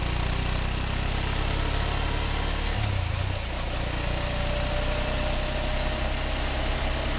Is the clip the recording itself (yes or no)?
yes